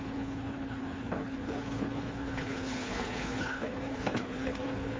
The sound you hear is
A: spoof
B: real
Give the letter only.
A